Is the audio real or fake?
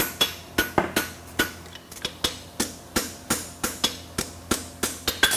real